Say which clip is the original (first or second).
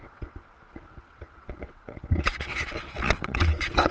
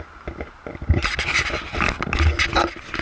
second